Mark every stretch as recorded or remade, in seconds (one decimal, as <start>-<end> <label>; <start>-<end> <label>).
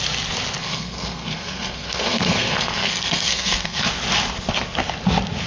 0.0-0.6 recorded; 0.6-3.9 remade; 3.9-5.5 recorded